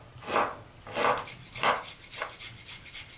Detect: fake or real real